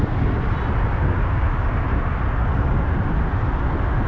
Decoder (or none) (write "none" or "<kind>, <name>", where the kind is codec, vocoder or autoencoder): none